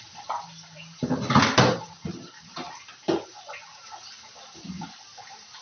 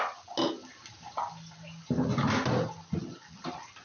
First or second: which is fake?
first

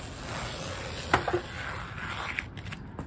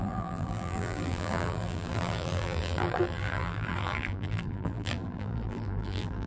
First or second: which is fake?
second